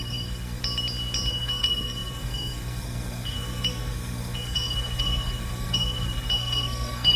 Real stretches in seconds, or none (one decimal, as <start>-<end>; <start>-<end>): 0.6-1.3